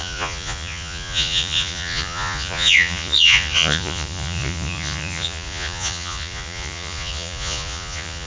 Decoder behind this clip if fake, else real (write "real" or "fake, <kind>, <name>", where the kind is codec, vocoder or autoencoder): fake, vocoder, Vocos